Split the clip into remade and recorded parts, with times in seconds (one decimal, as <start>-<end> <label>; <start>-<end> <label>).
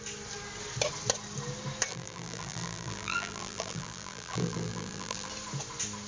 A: 0.0-1.9 recorded; 1.9-5.3 remade; 5.3-6.1 recorded